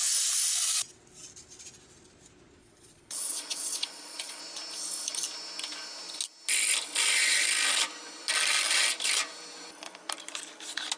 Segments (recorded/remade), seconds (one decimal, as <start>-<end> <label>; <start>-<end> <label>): 0.0-2.6 recorded; 2.6-4.4 remade; 4.4-11.0 recorded